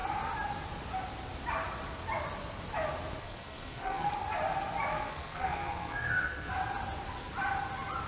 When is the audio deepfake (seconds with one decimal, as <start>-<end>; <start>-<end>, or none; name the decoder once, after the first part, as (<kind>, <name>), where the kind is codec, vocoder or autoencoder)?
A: 3.2-4.1 (codec, SNAC); 4.9-6.5